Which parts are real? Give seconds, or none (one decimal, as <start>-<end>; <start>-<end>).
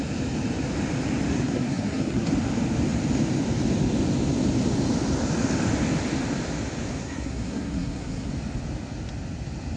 0.0-1.3; 2.3-7.0; 8.3-9.8